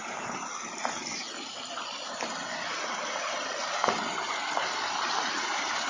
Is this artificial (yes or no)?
no